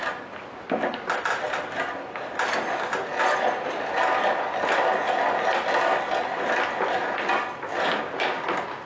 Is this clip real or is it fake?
real